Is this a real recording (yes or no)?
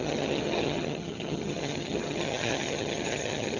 no